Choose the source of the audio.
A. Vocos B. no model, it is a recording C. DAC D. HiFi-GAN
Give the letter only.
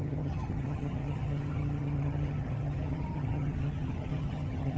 D